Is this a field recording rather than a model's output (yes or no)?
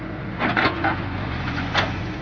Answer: no